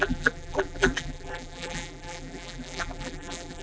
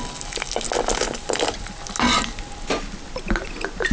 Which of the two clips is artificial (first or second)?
first